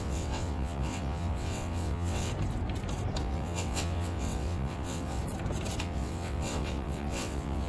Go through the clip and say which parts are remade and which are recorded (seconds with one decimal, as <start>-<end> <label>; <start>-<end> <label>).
0.0-2.3 remade; 2.3-3.2 recorded; 3.2-5.2 remade; 5.2-5.8 recorded; 5.8-7.7 remade